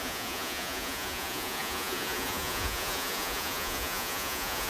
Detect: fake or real fake